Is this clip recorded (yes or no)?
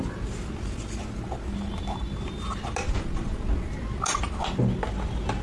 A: yes